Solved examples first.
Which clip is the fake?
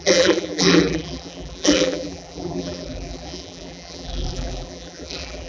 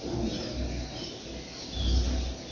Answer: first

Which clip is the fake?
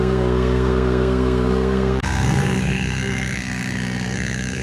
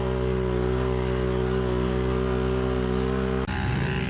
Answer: first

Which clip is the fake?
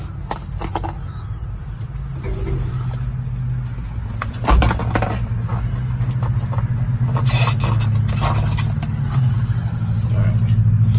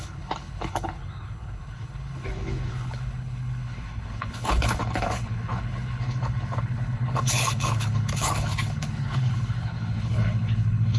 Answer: second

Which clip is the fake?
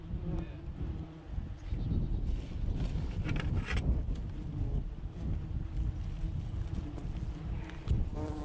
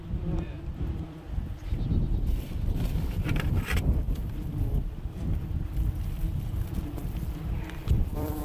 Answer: second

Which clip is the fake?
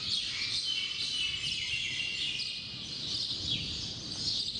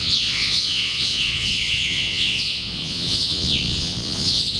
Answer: second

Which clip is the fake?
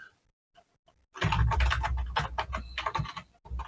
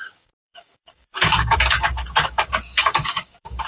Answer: second